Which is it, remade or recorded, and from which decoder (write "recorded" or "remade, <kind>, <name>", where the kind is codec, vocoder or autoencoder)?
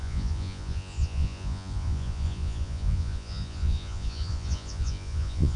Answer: remade, vocoder, Vocos